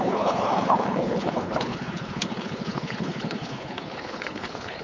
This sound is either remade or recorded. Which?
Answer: remade